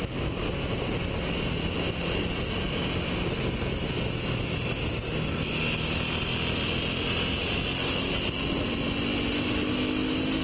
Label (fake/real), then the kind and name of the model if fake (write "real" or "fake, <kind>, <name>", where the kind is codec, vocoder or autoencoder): real